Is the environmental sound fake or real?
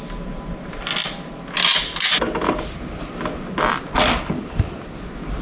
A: real